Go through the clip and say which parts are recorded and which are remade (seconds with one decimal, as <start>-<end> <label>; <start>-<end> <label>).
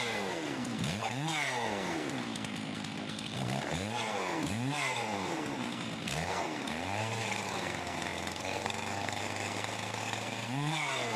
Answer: 0.0-11.2 remade